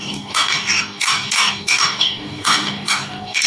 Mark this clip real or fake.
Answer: fake